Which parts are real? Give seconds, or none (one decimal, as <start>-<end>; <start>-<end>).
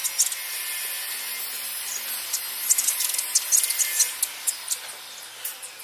0.0-5.8